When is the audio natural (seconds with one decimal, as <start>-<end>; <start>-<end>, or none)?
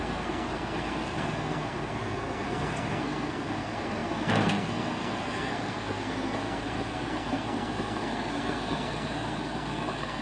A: none